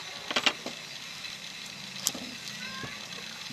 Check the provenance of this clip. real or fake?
real